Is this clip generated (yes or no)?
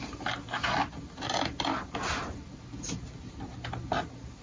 no